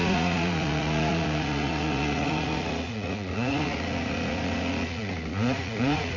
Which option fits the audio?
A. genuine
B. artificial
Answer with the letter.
B